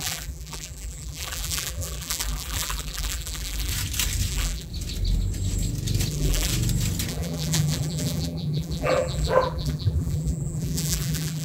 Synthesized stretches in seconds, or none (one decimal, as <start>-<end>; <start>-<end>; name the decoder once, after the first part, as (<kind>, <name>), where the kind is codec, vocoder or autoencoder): 0.0-3.7 (vocoder, BigVGAN v2); 4.3-4.7; 6.1-6.5; 7.1-11.4